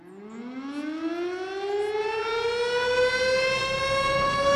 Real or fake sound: real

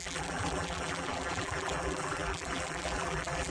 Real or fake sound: fake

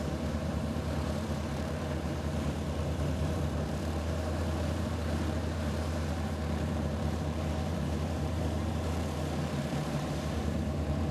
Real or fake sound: fake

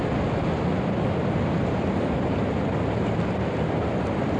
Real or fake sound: fake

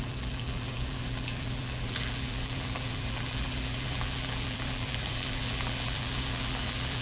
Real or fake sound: fake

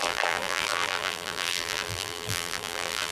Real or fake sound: fake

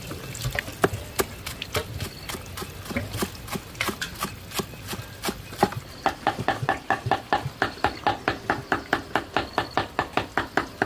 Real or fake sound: real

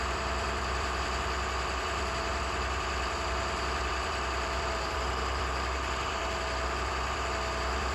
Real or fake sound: fake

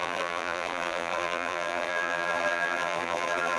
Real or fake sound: fake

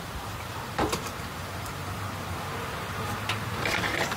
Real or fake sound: fake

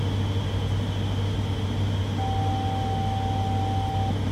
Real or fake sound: real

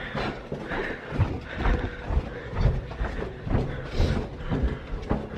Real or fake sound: real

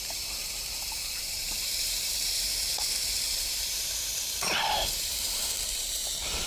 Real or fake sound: fake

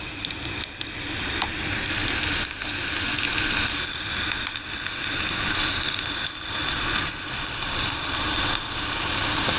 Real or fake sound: fake